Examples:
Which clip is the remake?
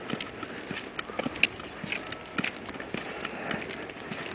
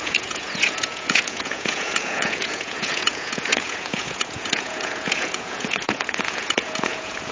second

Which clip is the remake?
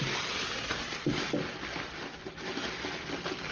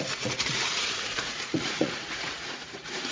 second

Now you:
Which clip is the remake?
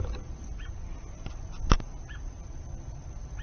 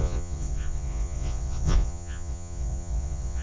second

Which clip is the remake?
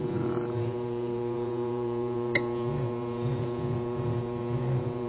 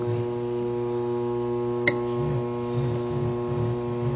first